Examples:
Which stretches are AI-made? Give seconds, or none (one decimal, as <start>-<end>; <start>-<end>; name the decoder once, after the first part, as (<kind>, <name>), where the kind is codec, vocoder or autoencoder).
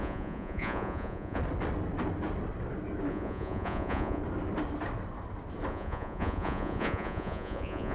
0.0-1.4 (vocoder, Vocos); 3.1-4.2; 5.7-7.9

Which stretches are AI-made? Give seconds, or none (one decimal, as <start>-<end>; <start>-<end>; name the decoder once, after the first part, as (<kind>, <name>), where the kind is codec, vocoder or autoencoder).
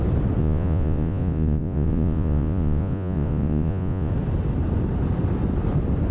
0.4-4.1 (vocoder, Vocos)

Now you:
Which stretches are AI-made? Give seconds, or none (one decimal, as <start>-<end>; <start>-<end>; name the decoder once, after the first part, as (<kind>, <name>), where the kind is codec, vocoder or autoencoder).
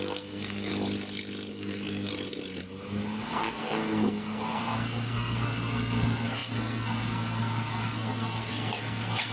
0.0-0.7 (codec, SNAC); 1.5-2.1; 3.2-9.3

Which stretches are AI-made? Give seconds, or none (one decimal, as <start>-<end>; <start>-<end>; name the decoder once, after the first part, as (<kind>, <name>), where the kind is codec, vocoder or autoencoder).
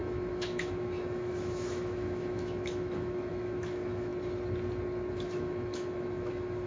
0.0-4.1 (autoencoder, DAC-VAE); 5.1-6.7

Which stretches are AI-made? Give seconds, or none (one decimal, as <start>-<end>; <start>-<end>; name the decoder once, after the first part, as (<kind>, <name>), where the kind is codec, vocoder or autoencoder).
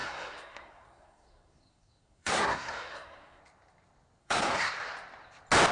0.0-3.4 (codec, SNAC); 4.2-4.7